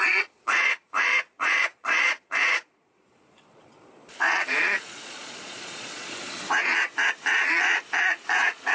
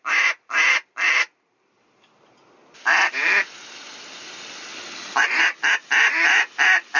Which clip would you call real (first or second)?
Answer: second